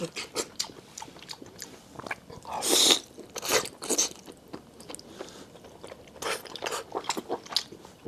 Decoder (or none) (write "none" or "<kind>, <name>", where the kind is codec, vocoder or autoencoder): none